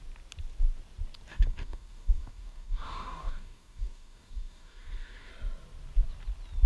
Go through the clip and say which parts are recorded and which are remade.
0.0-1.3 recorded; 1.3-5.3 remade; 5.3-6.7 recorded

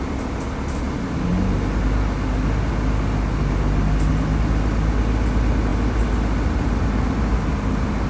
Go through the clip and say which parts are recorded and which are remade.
0.0-8.1 recorded

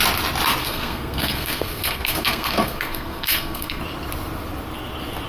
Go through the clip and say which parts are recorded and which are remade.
0.0-0.6 recorded; 0.6-3.8 remade; 3.8-5.3 recorded

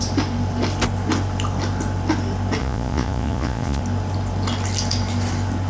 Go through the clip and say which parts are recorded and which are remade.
0.0-2.6 recorded; 2.6-3.8 remade; 3.8-5.7 recorded

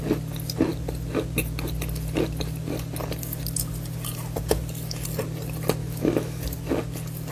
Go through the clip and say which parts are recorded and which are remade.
0.0-5.8 recorded; 5.8-6.4 remade; 6.4-7.3 recorded